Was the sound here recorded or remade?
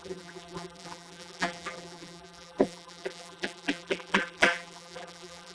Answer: remade